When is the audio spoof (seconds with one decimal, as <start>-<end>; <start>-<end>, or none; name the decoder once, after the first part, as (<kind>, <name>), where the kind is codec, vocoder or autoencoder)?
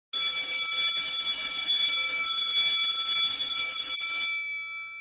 1.4-2.6 (codec, DAC); 3.3-3.8